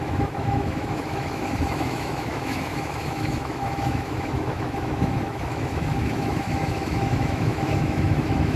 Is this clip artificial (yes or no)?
yes